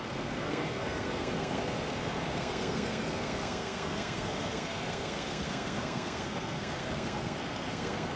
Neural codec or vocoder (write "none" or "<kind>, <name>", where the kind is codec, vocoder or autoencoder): codec, SNAC